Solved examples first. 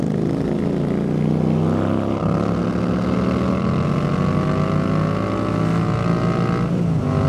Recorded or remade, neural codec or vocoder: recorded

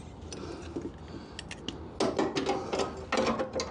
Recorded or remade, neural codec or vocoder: recorded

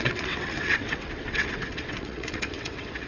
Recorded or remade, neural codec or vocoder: remade, vocoder, WaveNeXt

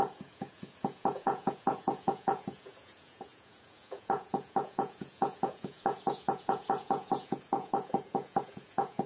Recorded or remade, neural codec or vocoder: remade, vocoder, Vocos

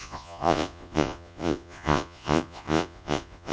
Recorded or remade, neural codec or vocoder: remade, vocoder, Vocos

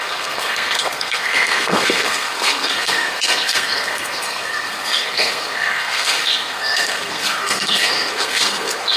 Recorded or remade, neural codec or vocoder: remade, codec, SNAC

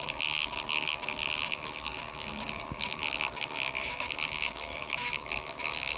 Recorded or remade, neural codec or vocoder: remade, codec, DAC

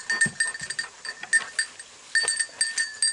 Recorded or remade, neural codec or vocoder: recorded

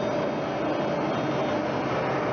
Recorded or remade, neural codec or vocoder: recorded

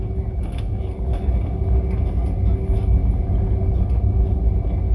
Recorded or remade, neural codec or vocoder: recorded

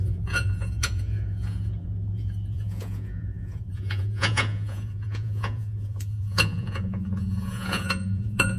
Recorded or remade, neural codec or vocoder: remade, vocoder, Vocos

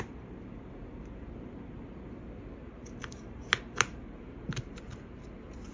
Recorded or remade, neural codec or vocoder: recorded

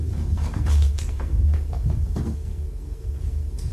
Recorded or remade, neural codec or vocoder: remade, codec, SNAC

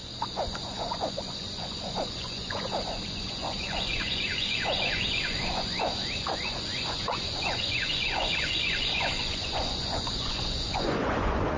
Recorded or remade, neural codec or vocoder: remade, vocoder, Vocos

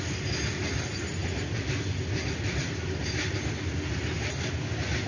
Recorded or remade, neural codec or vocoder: recorded